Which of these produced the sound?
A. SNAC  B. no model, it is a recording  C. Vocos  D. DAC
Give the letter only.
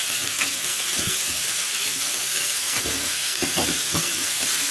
A